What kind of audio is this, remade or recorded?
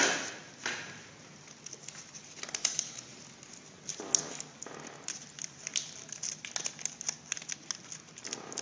recorded